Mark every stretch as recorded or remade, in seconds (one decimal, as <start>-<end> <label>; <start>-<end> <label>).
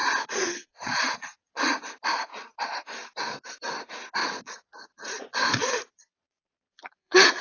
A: 0.0-1.7 remade; 1.7-4.2 recorded; 4.2-7.4 remade